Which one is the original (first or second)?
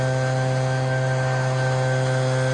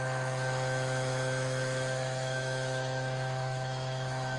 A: first